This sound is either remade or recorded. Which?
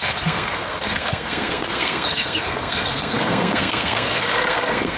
remade